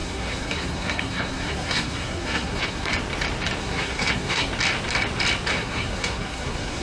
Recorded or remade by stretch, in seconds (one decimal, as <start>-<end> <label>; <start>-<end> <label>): 0.0-2.9 remade; 2.9-3.6 recorded; 3.6-4.5 remade; 4.5-5.5 recorded; 5.5-6.8 remade